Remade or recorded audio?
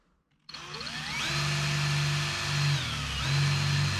recorded